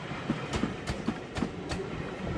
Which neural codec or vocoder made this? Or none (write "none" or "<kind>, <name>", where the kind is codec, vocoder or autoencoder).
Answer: none